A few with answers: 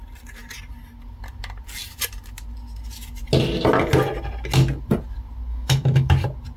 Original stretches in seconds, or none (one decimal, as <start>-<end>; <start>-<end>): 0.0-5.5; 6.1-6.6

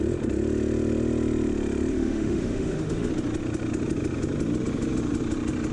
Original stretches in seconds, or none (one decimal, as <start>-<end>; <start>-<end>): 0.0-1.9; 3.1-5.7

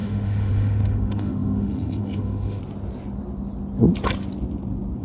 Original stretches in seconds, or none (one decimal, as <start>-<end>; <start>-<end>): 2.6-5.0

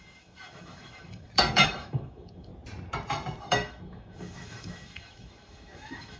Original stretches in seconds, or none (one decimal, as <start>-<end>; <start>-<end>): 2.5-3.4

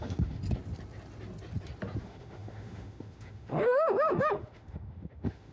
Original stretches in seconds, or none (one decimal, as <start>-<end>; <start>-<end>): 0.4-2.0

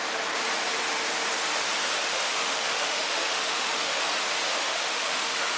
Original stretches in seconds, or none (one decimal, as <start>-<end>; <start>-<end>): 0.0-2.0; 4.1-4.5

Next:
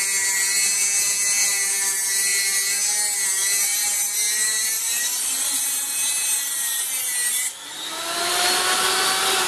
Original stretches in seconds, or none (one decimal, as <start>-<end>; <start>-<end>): 0.0-9.5

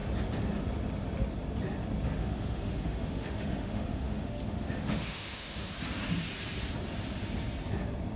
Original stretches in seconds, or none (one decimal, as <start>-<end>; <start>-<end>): 0.0-2.2; 5.7-8.2